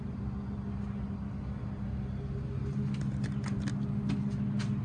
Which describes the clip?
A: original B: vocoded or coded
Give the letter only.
A